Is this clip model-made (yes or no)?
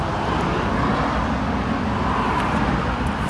no